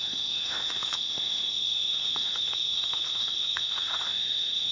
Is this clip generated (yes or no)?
yes